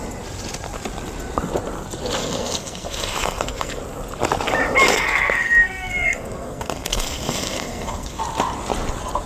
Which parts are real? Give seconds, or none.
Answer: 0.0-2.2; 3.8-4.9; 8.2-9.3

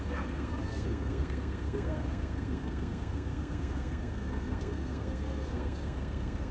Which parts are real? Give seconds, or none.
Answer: none